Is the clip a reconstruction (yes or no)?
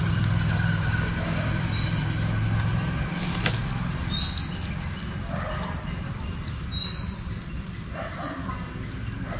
no